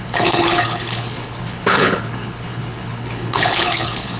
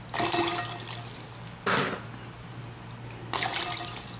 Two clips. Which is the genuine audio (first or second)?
second